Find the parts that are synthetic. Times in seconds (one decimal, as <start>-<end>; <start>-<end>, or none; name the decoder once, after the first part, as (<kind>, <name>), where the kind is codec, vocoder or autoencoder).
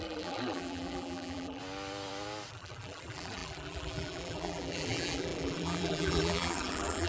0.0-1.6 (vocoder, BigVGAN v2); 2.5-7.1